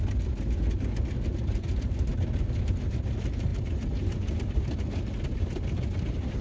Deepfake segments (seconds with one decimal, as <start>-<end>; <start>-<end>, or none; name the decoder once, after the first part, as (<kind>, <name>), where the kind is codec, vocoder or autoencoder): none